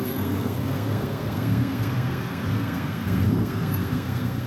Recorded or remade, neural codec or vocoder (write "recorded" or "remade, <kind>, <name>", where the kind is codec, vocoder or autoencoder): remade, codec, SNAC